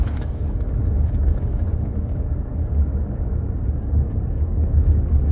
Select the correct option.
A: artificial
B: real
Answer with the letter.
A